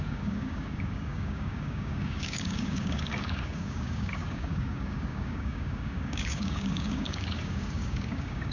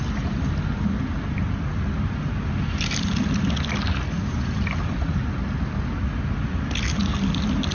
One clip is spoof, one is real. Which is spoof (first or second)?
first